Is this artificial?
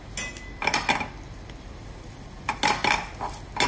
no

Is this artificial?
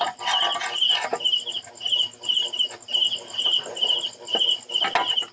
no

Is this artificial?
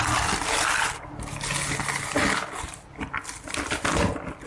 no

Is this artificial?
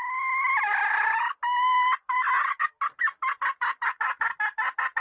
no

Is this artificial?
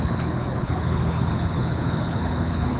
yes